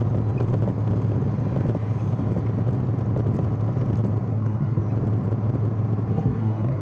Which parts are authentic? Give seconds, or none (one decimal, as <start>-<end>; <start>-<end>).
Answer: 0.0-4.3; 4.8-6.1